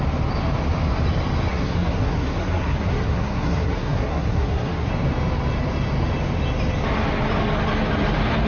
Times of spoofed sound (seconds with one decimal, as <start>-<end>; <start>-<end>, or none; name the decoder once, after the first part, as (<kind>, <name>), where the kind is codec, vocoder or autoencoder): 1.5-4.9 (codec, SNAC)